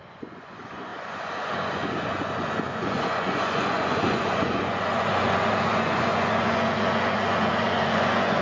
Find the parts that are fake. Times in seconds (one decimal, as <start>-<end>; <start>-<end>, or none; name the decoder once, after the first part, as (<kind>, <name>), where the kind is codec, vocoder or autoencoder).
0.0-8.4 (vocoder, Vocos)